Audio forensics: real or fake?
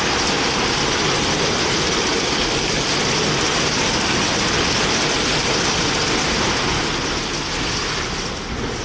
real